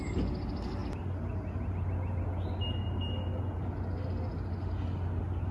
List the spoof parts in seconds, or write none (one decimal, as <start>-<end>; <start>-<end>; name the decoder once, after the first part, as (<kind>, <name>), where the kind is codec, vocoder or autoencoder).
none